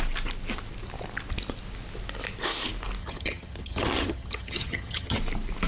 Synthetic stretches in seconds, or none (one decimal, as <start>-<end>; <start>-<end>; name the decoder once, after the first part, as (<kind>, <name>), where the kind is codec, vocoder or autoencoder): 3.0-5.2 (vocoder, HiFi-GAN)